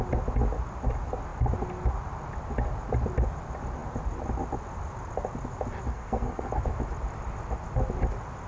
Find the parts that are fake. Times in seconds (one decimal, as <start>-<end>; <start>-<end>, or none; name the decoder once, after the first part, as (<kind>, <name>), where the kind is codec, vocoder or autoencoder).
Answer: 5.9-6.5 (codec, SNAC)